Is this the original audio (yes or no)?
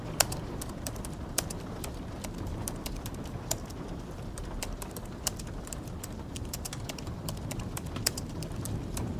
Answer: no